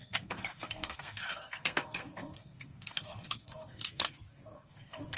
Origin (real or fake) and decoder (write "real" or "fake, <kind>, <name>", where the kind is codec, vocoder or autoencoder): fake, codec, SNAC